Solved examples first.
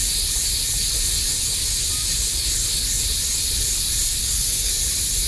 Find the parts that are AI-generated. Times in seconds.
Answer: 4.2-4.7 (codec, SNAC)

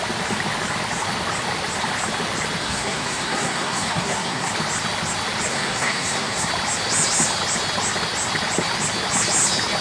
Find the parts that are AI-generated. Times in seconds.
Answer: 2.6-4.5 (codec, SNAC); 5.5-6.5

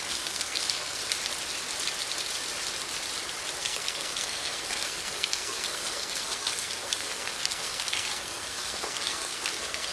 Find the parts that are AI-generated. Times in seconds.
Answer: 0.0-1.0 (codec, SNAC); 3.6-9.9

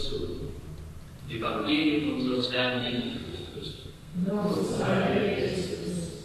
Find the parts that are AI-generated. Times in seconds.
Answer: 1.2-4.9 (codec, SNAC)

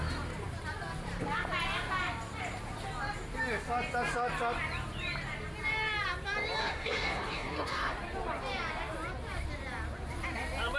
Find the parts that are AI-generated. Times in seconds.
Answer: 6.6-7.9 (codec, SNAC)

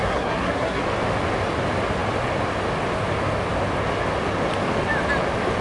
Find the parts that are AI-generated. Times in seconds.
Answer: 0.0-0.8 (codec, SNAC)